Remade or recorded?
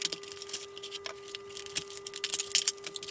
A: recorded